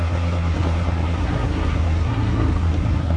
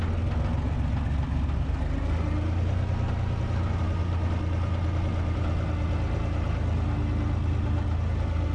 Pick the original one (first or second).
second